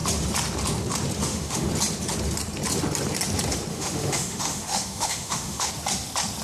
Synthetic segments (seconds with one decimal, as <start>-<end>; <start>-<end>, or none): 1.2-1.7; 3.7-5.7